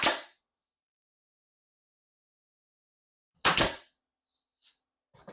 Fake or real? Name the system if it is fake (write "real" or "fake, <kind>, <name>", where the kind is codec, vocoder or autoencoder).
real